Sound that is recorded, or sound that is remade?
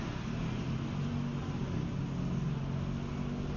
recorded